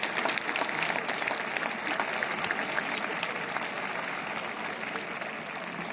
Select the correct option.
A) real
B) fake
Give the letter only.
A